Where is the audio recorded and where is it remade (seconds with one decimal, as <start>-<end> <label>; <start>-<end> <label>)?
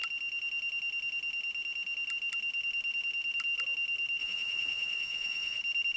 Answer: 0.0-4.2 recorded; 4.2-5.6 remade; 5.6-6.0 recorded